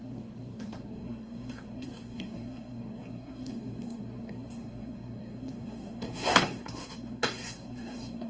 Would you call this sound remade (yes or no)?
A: yes